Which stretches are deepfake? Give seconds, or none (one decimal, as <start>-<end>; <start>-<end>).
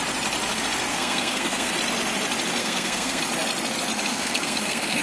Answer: 0.9-1.7; 2.6-3.2; 4.1-5.0